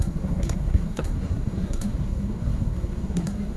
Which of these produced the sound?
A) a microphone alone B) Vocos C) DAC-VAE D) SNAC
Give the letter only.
D